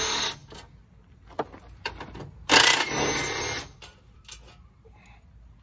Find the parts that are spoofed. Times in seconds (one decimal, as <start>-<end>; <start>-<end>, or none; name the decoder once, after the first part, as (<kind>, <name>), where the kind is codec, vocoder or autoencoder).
none